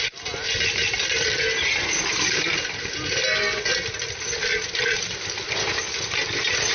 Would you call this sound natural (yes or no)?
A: yes